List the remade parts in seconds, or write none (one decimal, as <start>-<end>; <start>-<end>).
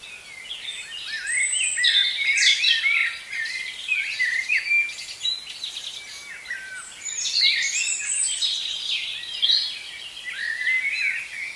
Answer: none